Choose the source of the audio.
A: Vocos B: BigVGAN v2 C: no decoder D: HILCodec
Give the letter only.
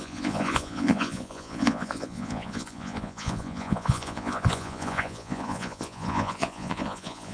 A